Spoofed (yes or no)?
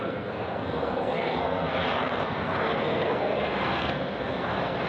yes